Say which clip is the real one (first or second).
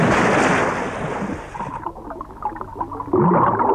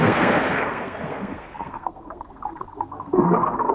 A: first